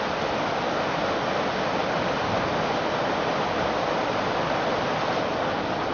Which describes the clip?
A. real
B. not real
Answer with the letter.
A